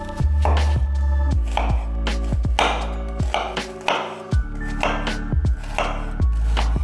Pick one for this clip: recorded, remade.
recorded